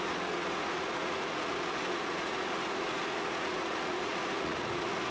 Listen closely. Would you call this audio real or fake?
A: fake